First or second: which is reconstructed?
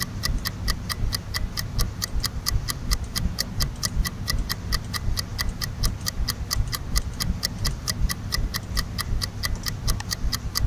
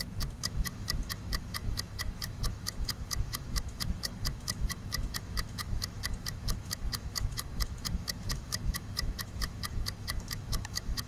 second